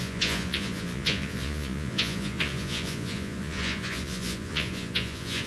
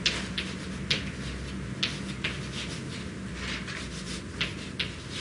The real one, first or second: second